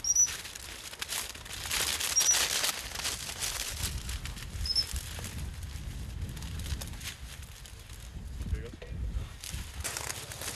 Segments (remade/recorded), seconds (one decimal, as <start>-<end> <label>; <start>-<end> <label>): 0.0-10.5 recorded